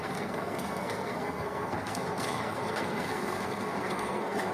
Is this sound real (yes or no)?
no